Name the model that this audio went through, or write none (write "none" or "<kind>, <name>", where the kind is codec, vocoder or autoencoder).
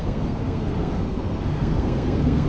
codec, SNAC